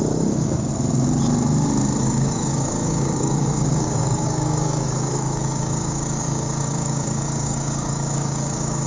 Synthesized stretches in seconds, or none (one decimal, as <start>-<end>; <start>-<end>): 0.0-0.7; 2.0-8.9